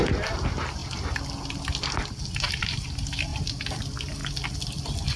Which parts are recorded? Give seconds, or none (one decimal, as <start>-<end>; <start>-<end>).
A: 0.8-2.5; 4.2-5.2